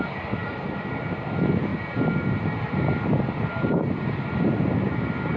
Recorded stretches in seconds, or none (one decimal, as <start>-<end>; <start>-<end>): 0.0-0.4; 1.0-1.7; 4.9-5.4